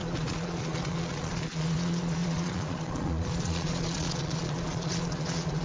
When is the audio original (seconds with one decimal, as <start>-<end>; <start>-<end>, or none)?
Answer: none